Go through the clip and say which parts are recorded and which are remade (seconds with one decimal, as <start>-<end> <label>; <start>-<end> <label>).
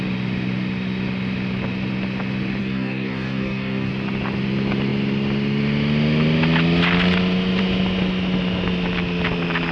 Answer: 0.0-2.6 recorded; 2.6-3.9 remade; 3.9-9.7 recorded